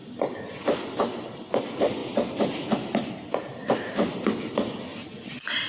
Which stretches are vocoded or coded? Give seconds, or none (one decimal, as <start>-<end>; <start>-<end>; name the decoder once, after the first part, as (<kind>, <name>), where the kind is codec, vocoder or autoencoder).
none